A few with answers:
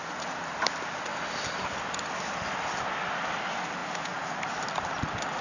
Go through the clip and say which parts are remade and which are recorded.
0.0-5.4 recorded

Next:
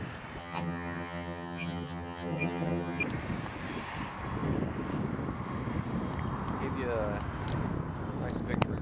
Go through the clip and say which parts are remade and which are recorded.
0.0-0.4 recorded; 0.4-3.0 remade; 3.0-8.8 recorded

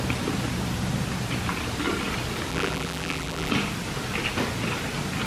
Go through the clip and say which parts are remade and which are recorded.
0.0-2.5 recorded; 2.5-3.5 remade; 3.5-5.3 recorded

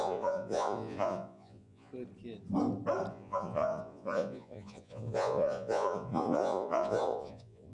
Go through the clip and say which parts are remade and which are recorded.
0.0-1.9 remade; 1.9-3.1 recorded; 3.1-7.7 remade

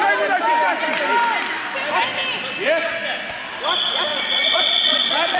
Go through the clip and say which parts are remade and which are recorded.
0.0-4.1 recorded; 4.1-5.4 remade

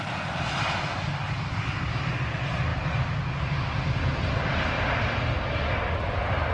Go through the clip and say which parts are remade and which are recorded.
0.0-6.5 recorded